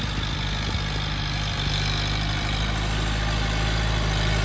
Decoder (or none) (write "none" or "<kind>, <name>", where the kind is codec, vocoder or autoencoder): none